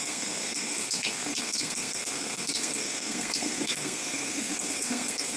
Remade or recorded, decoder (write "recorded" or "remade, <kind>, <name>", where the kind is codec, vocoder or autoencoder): remade, codec, SNAC